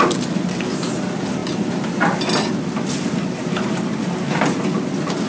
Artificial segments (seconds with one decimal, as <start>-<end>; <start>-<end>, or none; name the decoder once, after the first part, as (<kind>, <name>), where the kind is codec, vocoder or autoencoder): none